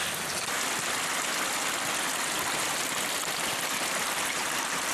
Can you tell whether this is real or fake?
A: real